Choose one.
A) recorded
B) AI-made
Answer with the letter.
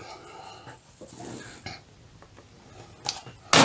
A